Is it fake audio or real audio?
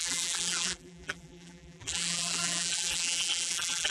fake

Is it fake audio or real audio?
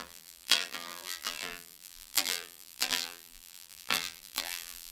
fake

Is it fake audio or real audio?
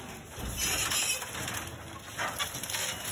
real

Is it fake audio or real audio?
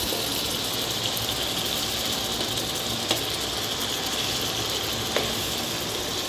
real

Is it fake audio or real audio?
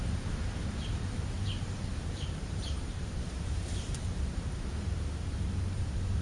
fake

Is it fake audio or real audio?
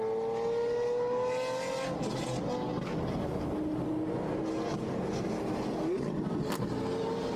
real